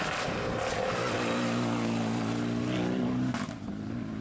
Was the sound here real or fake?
real